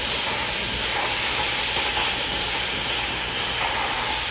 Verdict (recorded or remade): recorded